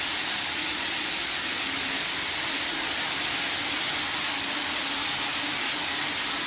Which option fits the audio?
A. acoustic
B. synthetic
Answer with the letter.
A